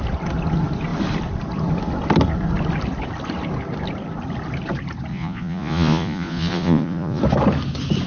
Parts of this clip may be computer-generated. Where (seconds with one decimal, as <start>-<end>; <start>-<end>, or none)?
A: 5.1-7.2